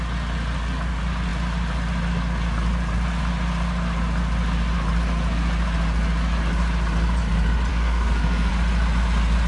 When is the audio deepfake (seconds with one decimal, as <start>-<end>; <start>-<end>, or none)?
7.7-8.5